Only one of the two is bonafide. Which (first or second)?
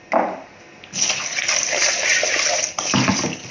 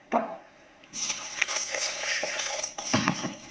first